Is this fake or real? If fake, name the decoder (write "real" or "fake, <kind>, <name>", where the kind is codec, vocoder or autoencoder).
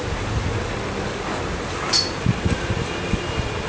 real